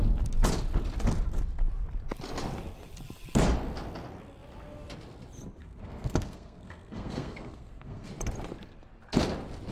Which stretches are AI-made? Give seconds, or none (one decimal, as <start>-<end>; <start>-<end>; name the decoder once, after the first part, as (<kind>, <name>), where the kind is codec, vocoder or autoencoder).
5.6-8.1 (codec, SNAC)